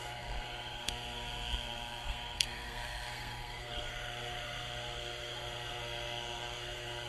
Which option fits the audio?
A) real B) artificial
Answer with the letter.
B